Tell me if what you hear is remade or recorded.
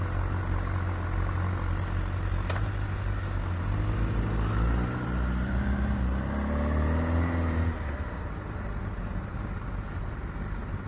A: recorded